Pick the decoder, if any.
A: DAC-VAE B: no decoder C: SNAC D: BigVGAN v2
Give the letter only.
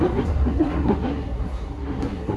C